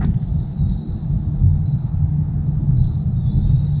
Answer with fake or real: real